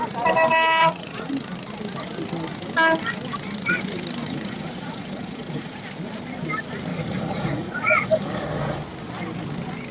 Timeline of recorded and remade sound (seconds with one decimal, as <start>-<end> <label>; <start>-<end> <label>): 0.0-0.8 recorded; 0.8-1.3 remade; 1.3-4.2 recorded; 4.2-5.7 remade; 5.7-6.9 recorded; 6.9-8.8 remade; 8.8-9.9 recorded